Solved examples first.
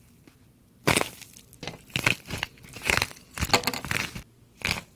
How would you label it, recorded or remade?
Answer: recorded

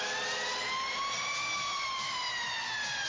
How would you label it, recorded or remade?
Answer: recorded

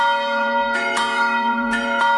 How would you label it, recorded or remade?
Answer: remade